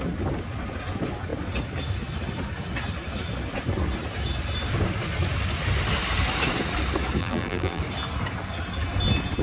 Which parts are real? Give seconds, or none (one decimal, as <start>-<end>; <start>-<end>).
0.0-7.2; 7.8-9.4